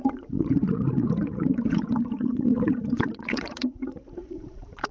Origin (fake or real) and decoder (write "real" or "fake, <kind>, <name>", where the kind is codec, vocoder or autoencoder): fake, vocoder, Vocos